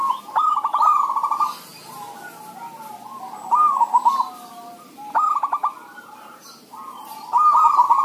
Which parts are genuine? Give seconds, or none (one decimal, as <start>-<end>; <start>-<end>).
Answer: 0.0-8.0